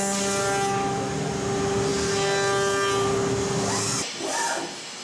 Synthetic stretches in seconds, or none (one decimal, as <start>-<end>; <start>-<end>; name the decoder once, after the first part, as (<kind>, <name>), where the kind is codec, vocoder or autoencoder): none